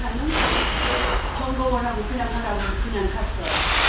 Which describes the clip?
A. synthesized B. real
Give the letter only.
B